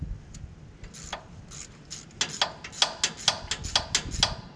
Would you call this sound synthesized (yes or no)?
no